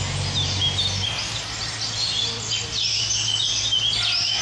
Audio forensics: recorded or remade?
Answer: recorded